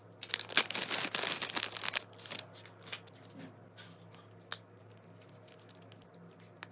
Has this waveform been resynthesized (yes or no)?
no